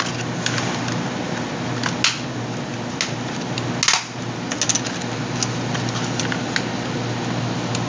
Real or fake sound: real